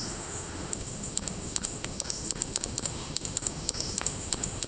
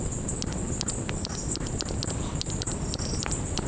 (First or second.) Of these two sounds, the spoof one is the first